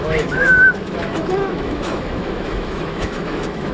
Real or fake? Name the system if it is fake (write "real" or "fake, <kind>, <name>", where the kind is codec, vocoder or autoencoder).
fake, autoencoder, DAC-VAE